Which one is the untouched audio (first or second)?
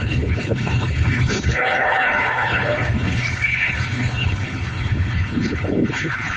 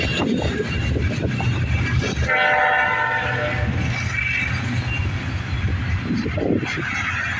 second